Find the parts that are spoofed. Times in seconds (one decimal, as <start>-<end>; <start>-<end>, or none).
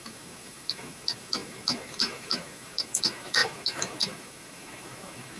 0.0-5.4